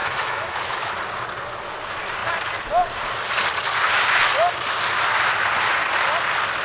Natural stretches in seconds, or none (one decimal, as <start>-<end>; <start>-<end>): 0.9-6.6